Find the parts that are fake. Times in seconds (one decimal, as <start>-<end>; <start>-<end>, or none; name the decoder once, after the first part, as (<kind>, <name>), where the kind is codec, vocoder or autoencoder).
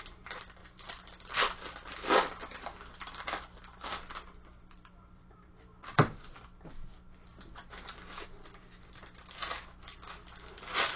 0.0-0.6 (vocoder, BigVGAN v2); 5.0-5.5; 10.5-11.0